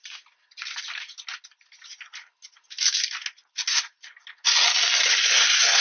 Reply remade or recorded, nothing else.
recorded